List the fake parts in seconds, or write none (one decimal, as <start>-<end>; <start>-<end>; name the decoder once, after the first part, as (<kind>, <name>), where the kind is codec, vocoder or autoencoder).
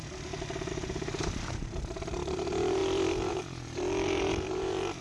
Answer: 0.7-5.0 (vocoder, BigVGAN v2)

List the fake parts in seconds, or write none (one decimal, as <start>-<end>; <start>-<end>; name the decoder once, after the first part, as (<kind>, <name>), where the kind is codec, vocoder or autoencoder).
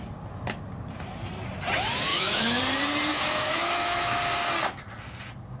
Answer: 2.1-2.6 (autoencoder, DAC-VAE); 3.1-4.2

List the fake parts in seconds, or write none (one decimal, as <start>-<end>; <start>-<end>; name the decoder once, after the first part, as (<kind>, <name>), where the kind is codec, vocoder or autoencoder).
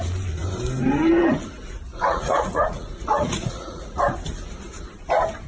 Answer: 1.9-4.0 (vocoder, Vocos)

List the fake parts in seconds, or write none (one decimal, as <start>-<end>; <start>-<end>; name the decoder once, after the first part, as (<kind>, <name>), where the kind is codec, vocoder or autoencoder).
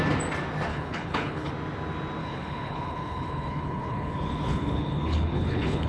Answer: 0.7-1.5 (codec, HILCodec); 2.2-5.9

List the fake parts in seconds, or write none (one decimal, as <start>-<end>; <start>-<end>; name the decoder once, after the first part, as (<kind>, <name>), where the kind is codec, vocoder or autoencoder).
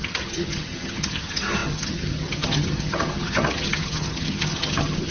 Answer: 0.0-5.1 (vocoder, HiFi-GAN)